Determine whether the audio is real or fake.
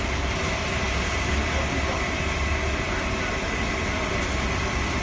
real